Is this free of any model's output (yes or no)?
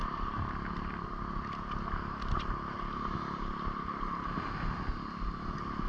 yes